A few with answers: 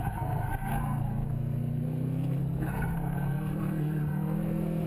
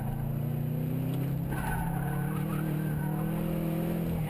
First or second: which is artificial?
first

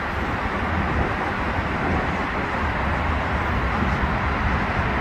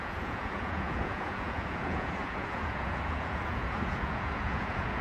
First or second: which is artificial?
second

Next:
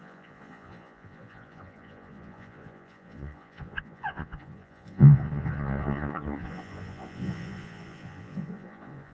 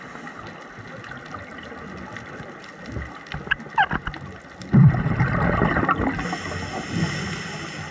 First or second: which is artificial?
first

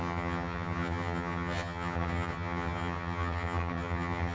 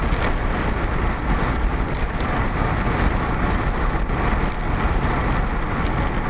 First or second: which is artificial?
first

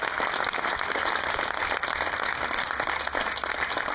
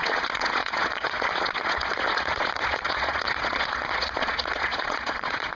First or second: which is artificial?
second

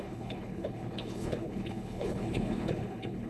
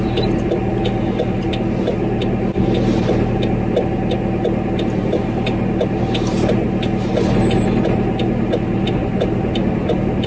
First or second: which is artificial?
first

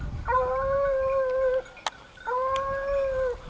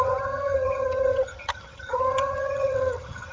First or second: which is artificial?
second